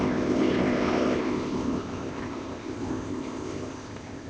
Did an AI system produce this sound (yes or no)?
yes